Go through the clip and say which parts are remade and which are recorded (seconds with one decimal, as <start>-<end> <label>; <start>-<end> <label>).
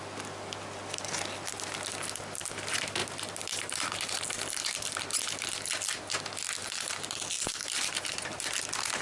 0.0-3.0 recorded; 3.0-4.2 remade; 4.2-6.6 recorded; 6.6-8.3 remade; 8.3-9.0 recorded